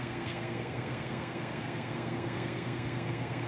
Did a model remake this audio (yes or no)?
yes